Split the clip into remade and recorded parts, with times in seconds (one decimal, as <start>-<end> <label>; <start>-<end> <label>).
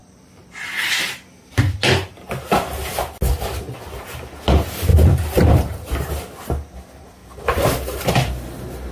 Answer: 0.0-1.5 remade; 1.5-4.9 recorded; 4.9-6.1 remade; 6.1-8.9 recorded